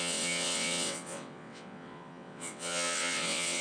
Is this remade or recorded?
remade